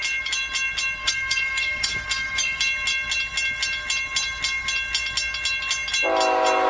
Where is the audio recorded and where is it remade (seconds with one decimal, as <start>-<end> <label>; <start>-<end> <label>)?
0.0-1.0 recorded; 1.0-2.6 remade; 2.6-6.7 recorded